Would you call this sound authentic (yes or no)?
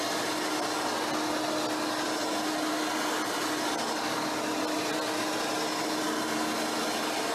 yes